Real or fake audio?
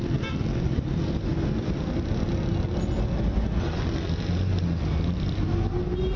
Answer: real